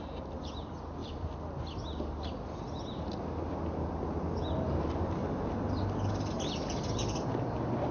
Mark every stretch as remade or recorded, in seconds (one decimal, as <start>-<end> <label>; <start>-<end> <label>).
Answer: 0.0-7.9 recorded